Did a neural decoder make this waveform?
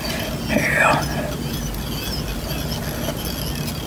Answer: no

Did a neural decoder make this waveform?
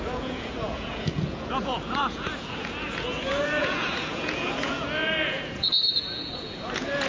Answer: yes